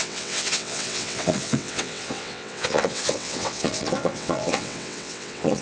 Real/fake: fake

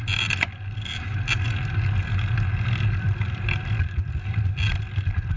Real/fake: real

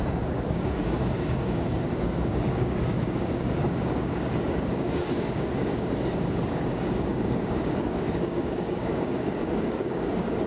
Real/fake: fake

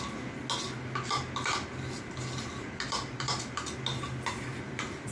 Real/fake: real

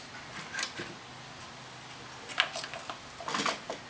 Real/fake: real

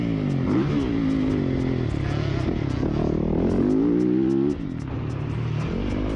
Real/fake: real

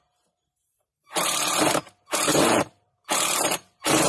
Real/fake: fake